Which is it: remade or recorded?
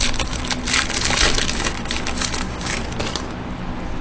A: recorded